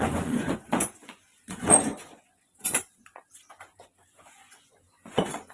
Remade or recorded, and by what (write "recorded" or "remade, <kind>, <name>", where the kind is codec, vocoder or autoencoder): remade, vocoder, Vocos